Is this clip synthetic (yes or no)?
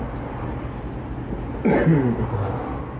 no